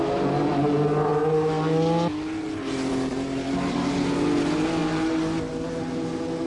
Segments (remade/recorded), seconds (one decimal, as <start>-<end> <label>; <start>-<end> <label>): 0.0-6.5 recorded